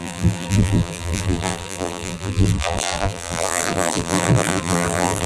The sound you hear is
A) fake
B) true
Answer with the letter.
A